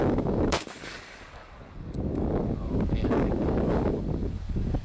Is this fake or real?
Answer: fake